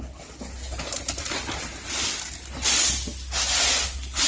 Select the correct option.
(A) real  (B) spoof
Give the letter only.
A